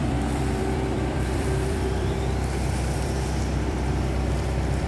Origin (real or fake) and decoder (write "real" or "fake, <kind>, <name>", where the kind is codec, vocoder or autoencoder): fake, vocoder, BigVGAN v2